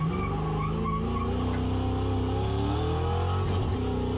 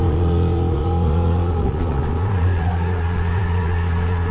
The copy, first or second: second